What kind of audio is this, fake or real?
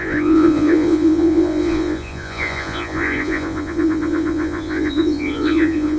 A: fake